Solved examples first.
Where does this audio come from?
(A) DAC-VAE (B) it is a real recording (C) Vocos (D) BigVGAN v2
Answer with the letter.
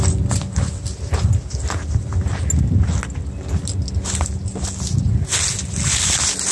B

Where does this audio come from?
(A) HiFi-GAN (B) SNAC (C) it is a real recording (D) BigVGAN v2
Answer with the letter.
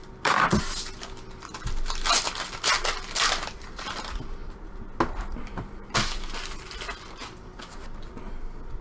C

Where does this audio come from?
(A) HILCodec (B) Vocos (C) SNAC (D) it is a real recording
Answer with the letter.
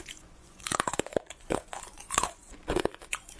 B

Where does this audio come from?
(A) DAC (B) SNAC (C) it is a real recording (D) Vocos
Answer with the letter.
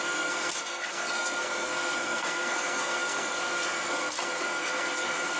B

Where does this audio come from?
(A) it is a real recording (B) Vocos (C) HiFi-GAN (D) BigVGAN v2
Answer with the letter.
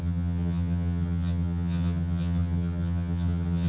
C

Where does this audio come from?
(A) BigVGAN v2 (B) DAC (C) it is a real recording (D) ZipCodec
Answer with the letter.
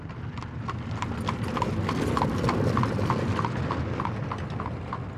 C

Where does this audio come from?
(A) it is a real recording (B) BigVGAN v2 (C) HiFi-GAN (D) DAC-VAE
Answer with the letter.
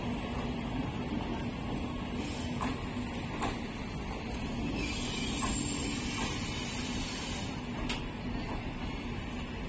A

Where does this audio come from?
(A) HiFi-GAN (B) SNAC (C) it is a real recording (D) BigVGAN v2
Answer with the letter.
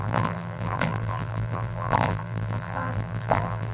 D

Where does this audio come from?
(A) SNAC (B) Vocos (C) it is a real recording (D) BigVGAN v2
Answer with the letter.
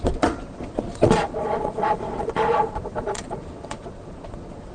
B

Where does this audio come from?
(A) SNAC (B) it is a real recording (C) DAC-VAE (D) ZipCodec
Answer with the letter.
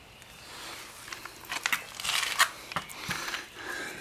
B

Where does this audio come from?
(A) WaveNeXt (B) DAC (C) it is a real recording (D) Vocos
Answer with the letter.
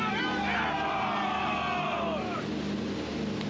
C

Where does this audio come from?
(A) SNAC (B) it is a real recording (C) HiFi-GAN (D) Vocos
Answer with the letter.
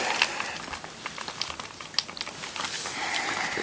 B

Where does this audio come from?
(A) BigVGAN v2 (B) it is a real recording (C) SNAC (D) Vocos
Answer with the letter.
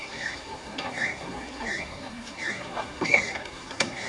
C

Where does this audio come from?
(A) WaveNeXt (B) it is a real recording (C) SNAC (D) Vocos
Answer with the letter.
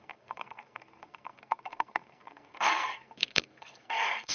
C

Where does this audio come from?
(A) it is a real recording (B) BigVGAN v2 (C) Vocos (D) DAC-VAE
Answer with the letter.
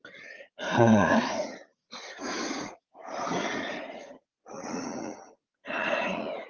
C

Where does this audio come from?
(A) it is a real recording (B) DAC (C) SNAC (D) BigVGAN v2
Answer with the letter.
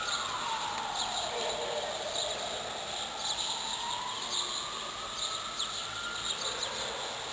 A